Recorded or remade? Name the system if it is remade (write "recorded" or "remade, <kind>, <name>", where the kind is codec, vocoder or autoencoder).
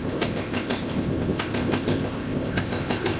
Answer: remade, codec, ZipCodec